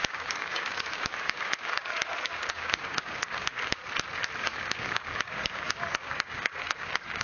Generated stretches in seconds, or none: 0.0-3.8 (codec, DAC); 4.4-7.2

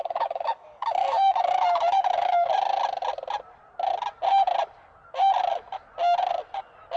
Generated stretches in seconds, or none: 0.0-2.5 (codec, DAC)

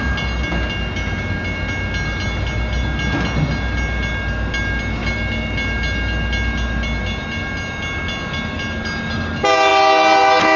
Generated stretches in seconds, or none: none